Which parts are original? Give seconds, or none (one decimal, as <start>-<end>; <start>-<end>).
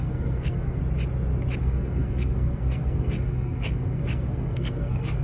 0.8-1.6